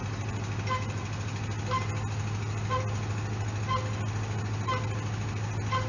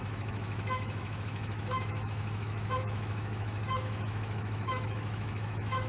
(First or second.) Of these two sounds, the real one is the first